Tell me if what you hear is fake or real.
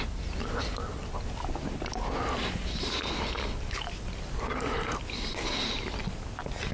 real